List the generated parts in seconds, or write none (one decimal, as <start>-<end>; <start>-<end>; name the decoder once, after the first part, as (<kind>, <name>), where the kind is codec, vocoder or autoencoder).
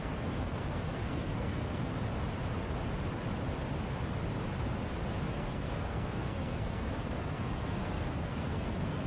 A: 0.0-1.9 (codec, SNAC); 5.3-9.1